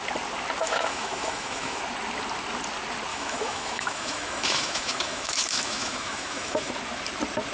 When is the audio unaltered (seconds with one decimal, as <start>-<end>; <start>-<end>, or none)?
0.0-0.6; 1.8-3.1; 6.7-7.5